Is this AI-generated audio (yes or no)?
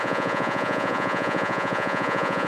yes